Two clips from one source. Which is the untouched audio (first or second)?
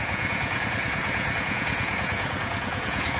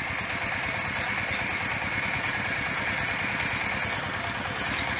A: second